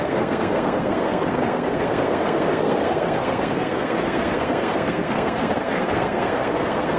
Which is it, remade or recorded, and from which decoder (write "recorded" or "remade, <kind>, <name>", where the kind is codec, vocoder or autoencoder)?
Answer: remade, codec, SNAC